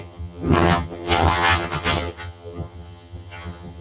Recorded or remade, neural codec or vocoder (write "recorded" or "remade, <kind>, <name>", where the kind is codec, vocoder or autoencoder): remade, vocoder, HiFi-GAN